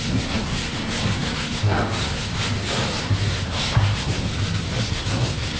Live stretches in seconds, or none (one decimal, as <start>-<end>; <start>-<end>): 2.3-3.0; 4.3-4.9